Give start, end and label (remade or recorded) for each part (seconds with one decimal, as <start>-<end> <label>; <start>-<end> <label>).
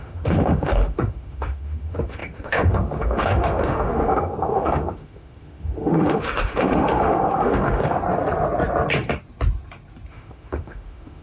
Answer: 0.0-8.0 remade; 8.0-10.1 recorded; 10.1-11.2 remade